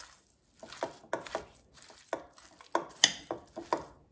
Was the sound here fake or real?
real